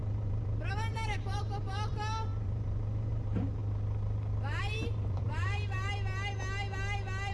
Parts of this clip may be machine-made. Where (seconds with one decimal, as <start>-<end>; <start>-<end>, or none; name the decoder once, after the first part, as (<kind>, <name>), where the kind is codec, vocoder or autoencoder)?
0.0-3.6 (vocoder, BigVGAN v2); 4.6-5.9